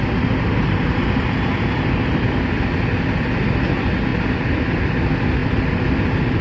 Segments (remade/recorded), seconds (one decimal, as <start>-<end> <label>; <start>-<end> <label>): 0.0-6.4 recorded